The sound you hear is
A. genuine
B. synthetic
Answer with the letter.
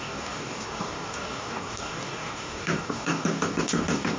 B